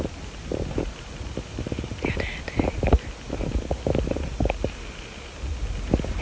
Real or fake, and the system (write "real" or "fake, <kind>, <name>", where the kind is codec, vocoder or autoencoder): real